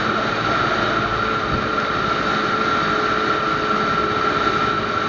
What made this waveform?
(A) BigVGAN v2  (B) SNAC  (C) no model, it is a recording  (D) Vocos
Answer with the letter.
C